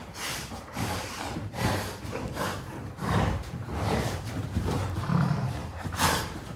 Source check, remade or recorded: remade